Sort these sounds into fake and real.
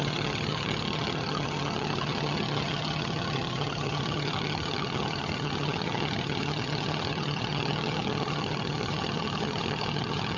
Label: fake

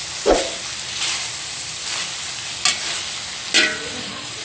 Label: real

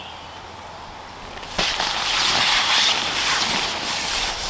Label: real